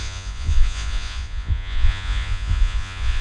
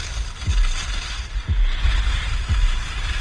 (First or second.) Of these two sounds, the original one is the second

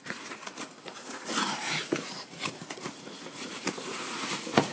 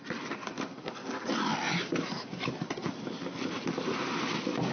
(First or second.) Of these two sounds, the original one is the second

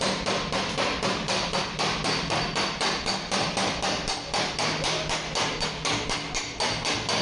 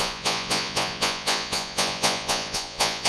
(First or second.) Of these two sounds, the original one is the first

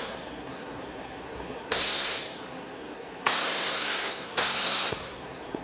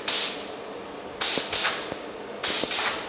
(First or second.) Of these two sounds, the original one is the second